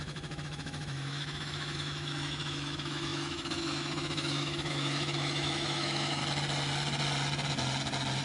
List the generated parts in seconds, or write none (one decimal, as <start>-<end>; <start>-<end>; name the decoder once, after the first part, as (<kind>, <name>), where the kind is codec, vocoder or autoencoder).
0.0-6.2 (autoencoder, DAC-VAE)